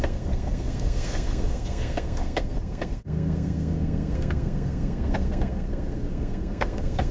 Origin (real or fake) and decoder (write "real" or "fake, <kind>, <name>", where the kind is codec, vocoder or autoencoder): fake, codec, SNAC